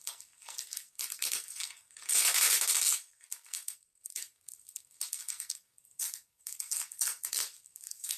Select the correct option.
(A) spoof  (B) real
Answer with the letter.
A